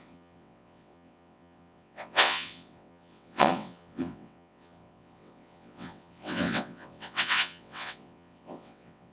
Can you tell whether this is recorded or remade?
remade